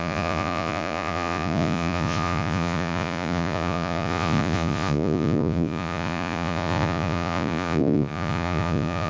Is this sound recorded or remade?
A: remade